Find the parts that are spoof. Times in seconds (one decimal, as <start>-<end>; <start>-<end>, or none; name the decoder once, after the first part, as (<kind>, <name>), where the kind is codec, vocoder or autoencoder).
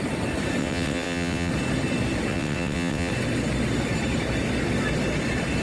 0.6-1.5 (vocoder, WaveNeXt); 2.3-3.1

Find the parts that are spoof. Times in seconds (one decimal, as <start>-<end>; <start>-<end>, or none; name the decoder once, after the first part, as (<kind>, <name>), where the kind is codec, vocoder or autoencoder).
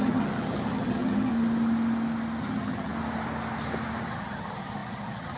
0.0-1.3 (vocoder, HiFi-GAN); 2.4-2.9; 4.1-5.4